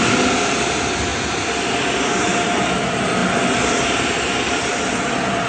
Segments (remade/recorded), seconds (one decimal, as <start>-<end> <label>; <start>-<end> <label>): 0.0-1.1 remade; 1.1-2.2 recorded; 2.2-3.2 remade; 3.2-4.1 recorded; 4.1-5.5 remade